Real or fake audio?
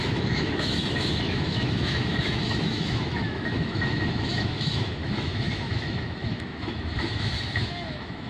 fake